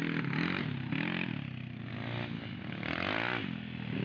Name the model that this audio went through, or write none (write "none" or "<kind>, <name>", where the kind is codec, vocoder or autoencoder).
none